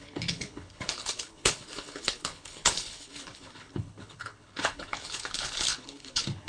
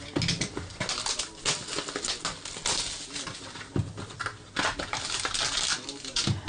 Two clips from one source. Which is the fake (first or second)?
first